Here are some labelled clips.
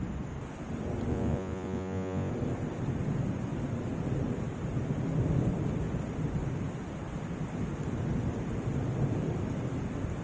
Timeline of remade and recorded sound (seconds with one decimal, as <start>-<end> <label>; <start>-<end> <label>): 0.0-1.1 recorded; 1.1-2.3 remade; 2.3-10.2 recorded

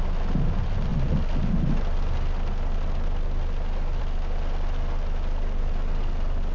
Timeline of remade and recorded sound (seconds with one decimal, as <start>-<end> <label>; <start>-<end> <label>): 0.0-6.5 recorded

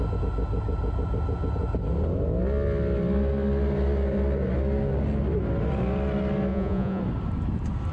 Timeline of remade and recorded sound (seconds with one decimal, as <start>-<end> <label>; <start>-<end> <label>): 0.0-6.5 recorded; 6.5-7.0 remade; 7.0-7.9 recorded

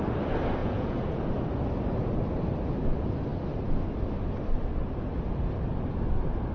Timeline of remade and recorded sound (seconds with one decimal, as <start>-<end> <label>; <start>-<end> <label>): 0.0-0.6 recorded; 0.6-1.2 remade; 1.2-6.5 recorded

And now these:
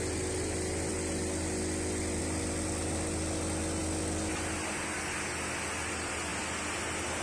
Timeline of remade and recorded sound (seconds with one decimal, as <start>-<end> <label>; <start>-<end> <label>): 0.0-7.2 recorded

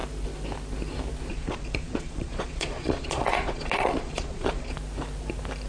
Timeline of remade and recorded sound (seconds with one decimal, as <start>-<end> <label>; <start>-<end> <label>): 0.0-1.3 recorded; 1.3-4.7 remade; 4.7-5.7 recorded

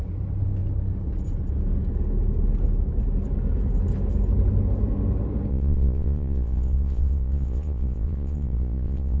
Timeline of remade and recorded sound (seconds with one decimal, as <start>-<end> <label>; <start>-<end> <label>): 0.0-5.5 recorded; 5.5-9.2 remade